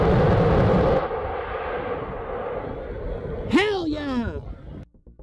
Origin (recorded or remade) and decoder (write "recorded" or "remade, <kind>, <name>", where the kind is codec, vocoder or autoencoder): recorded